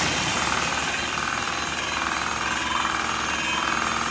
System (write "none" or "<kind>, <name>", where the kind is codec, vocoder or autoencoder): none